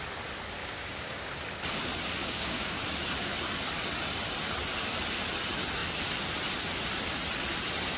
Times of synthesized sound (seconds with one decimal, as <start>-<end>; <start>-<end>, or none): 0.6-1.3; 2.2-2.8